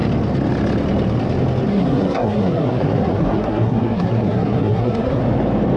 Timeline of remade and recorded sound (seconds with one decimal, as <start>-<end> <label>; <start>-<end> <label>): 0.0-1.7 recorded; 1.7-5.2 remade; 5.2-5.8 recorded